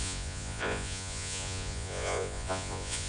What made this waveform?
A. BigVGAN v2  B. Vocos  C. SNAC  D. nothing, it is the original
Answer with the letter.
B